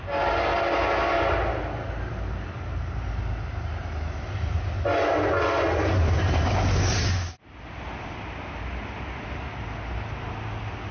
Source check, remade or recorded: recorded